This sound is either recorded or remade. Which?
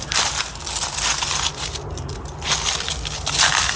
recorded